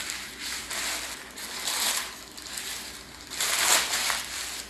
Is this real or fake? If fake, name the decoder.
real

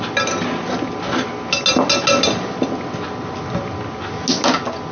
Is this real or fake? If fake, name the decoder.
real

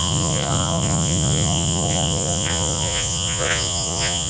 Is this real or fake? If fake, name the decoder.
fake, vocoder, Vocos